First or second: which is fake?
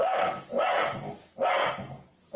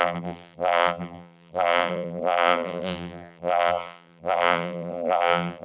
second